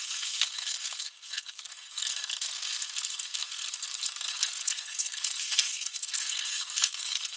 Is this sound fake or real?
fake